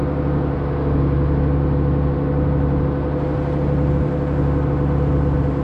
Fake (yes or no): no